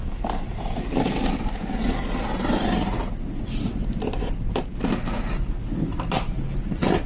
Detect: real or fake real